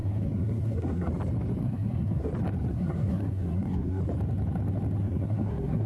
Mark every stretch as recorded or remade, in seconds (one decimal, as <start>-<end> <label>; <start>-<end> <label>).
0.0-1.1 remade; 1.1-1.6 recorded; 1.6-2.3 remade; 2.3-2.7 recorded; 2.7-4.0 remade; 4.0-5.0 recorded; 5.0-5.9 remade